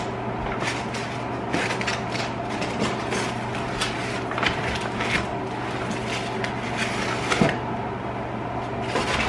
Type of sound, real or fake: real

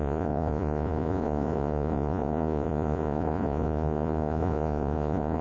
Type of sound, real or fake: fake